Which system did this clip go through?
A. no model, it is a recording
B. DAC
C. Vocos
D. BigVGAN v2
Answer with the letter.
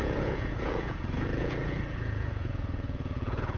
C